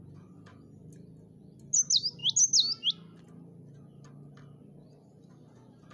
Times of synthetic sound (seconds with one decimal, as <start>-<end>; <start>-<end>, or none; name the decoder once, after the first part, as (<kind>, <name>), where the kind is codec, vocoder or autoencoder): none